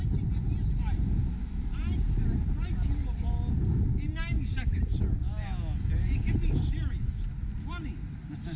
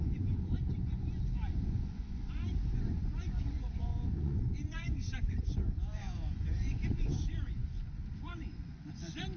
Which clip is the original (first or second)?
first